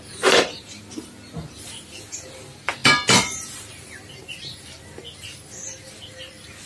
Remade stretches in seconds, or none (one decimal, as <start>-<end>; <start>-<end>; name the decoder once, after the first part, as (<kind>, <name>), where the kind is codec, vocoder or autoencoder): none